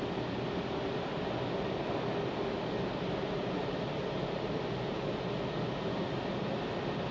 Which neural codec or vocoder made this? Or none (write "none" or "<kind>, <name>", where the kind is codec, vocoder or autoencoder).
none